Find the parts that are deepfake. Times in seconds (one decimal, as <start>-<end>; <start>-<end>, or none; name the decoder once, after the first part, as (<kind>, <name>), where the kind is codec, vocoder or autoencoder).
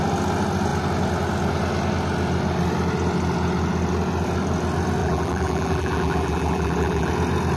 5.0-7.1 (vocoder, BigVGAN v2)